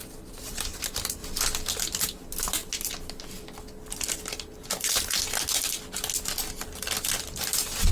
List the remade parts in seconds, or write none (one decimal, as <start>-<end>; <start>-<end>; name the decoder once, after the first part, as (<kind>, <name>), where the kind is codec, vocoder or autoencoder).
none

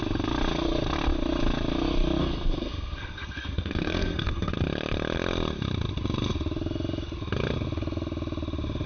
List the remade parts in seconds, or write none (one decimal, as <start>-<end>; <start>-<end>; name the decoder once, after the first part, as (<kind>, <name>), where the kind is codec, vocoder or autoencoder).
2.2-4.5 (codec, SNAC)

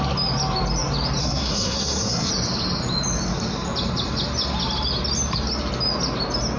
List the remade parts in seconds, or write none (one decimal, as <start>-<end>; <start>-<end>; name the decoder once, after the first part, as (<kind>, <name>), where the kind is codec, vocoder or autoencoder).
1.2-2.3 (codec, SNAC)

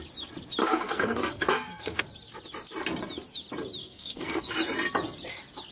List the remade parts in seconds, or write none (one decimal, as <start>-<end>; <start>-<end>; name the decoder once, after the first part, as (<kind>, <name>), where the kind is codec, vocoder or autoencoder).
0.6-2.0 (codec, SNAC); 3.8-4.5

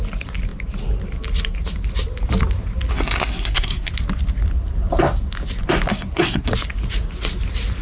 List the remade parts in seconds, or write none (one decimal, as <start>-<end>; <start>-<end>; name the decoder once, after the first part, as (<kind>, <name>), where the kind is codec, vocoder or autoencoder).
2.9-3.9 (codec, SNAC); 5.9-6.5

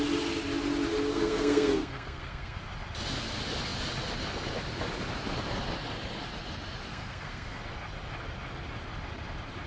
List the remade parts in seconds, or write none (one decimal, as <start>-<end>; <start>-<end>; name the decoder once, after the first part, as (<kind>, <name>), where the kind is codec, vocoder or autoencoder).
1.1-2.6 (codec, SNAC); 6.9-7.6

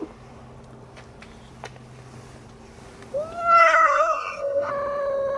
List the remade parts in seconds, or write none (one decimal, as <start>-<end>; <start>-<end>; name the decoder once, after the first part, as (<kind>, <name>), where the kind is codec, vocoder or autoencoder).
3.6-4.7 (codec, SNAC)